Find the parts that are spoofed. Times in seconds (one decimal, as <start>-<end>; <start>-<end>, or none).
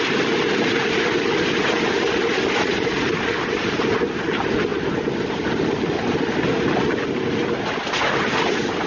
none